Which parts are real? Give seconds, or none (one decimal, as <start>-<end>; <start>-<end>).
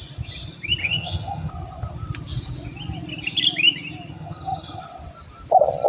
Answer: 0.0-0.8; 1.5-4.1; 4.8-5.9